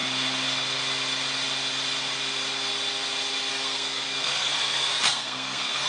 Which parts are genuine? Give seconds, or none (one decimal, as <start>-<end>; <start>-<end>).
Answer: 0.0-3.5